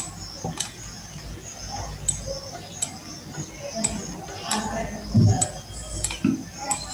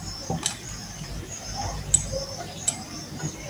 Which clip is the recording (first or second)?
first